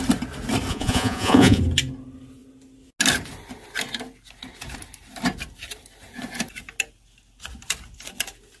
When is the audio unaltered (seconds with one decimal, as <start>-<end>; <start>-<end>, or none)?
0.0-0.7; 1.6-8.6